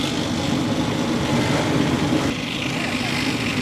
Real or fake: real